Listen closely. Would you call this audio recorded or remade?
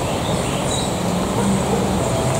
recorded